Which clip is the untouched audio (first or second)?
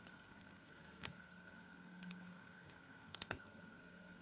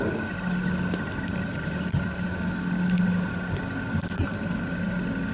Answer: second